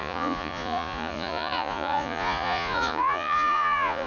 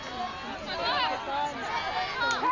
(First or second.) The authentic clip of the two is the second